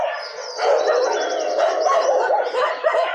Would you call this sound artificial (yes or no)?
no